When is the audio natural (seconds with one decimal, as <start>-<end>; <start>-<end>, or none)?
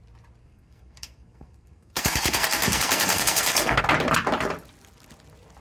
0.0-0.4; 3.8-5.6